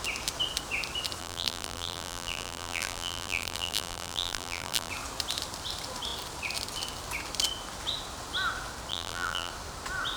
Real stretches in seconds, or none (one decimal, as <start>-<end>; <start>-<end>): 0.0-1.2; 4.9-8.9; 9.5-10.2

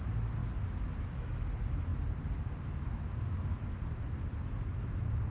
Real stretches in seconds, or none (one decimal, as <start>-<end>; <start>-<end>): 0.0-5.3

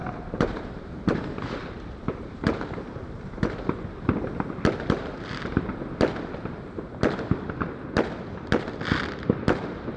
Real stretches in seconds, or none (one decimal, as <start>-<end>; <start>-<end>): 2.8-10.0

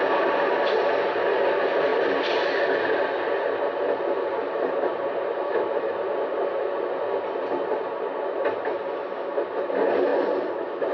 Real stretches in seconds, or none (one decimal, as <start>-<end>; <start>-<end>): 0.0-4.4; 5.7-10.9